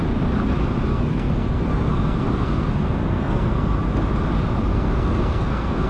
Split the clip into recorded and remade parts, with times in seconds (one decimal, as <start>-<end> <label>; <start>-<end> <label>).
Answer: 0.0-0.9 recorded; 0.9-3.8 remade; 3.8-4.7 recorded; 4.7-5.9 remade